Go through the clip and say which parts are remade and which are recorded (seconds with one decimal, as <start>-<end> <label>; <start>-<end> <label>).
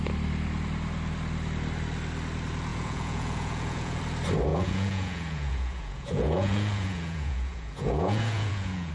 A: 0.0-2.7 recorded; 2.7-4.0 remade; 4.0-4.5 recorded; 4.5-8.9 remade